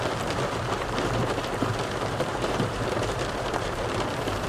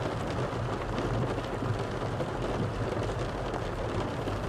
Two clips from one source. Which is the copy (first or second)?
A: first